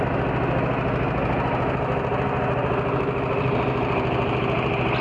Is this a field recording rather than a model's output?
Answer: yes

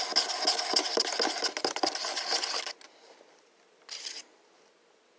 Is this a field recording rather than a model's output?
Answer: yes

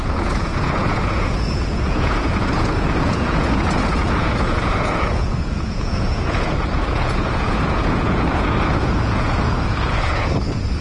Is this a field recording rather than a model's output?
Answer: no